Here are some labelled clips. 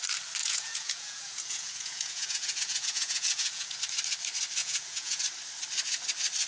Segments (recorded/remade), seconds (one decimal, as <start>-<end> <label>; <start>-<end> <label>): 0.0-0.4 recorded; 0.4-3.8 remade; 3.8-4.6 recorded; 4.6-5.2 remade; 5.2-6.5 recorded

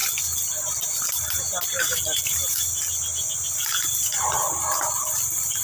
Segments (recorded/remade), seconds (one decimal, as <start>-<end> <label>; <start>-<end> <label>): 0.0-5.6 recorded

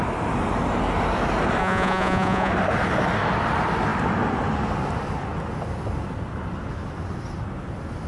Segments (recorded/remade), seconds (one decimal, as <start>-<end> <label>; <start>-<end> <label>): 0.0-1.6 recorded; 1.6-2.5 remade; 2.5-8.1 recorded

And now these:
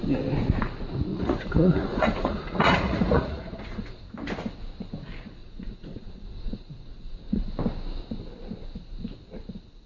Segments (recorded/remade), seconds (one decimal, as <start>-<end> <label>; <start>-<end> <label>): 0.0-1.1 recorded; 1.1-4.1 remade; 4.1-5.4 recorded; 5.4-7.4 remade; 7.4-9.9 recorded

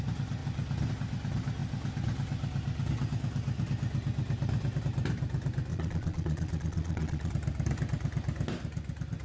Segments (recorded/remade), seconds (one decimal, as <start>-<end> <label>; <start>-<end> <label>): 0.0-5.7 recorded; 5.7-7.3 remade; 7.3-9.2 recorded

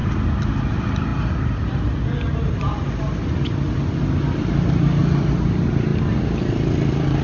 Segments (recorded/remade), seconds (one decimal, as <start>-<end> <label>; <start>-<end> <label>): 0.0-7.2 recorded

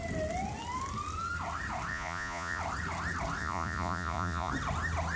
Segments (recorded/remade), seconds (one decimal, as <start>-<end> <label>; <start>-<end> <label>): 0.0-1.9 recorded; 1.9-2.6 remade; 2.6-3.4 recorded; 3.4-4.5 remade; 4.5-5.2 recorded

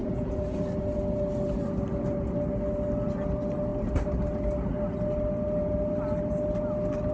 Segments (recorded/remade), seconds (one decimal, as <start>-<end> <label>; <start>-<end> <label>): 0.0-0.6 remade; 0.6-7.1 recorded